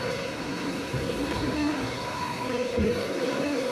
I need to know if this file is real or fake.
fake